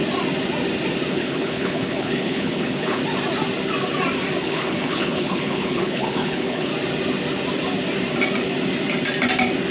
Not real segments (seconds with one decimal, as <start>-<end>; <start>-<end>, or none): 1.1-3.0; 4.4-6.7